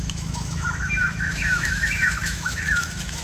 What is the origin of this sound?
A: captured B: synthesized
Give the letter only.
B